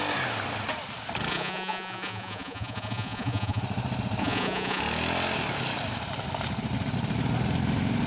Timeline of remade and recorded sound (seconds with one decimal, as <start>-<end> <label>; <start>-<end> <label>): 0.0-1.3 recorded; 1.3-3.6 remade; 3.6-4.2 recorded; 4.2-4.8 remade; 4.8-8.1 recorded